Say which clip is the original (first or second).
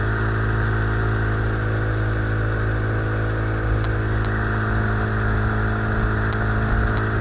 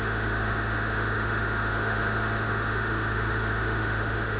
first